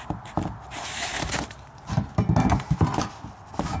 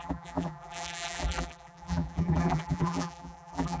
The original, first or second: first